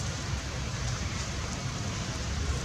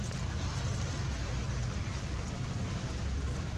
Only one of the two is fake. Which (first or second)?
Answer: first